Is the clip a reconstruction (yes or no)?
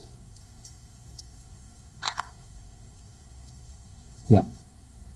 yes